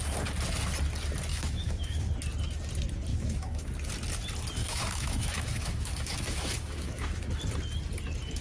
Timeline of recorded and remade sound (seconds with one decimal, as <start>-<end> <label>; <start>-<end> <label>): 0.0-1.3 recorded; 1.3-2.1 remade; 2.1-3.1 recorded; 3.1-3.7 remade; 3.7-4.6 recorded; 4.6-7.3 remade; 7.3-8.4 recorded